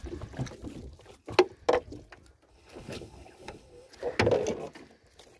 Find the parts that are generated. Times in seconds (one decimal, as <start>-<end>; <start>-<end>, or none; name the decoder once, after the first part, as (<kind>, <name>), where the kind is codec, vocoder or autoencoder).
2.5-3.9 (codec, HILCodec)